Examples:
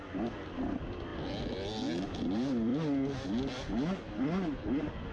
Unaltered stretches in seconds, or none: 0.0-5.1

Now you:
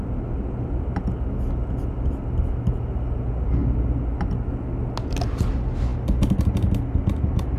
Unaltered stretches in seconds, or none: 0.0-7.6

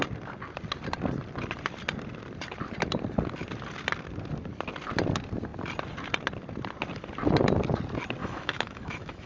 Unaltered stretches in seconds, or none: 0.0-8.2

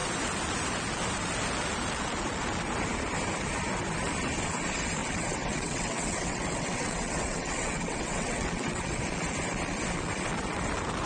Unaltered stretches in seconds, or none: 0.0-5.0; 9.0-11.1

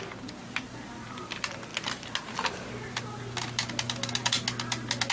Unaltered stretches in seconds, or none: 0.0-5.1

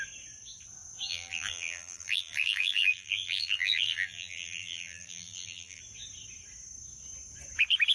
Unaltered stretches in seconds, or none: 0.0-1.1; 5.8-7.9

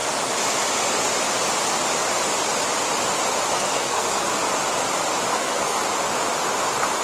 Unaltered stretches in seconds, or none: 0.0-3.5; 4.3-5.3; 5.8-7.0